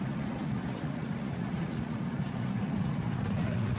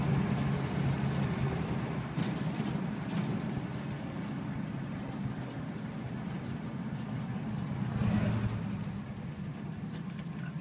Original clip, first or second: second